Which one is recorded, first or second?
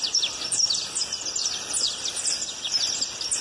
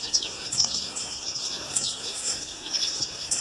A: first